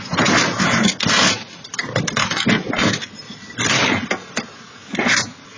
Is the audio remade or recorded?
recorded